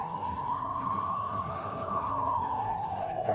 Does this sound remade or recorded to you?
remade